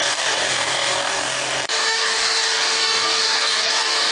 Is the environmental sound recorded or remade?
remade